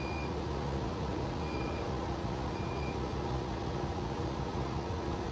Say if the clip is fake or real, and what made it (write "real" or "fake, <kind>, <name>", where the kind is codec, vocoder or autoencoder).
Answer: fake, vocoder, Vocos